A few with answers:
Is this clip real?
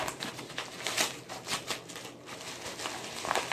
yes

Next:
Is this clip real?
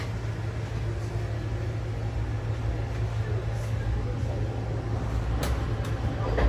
yes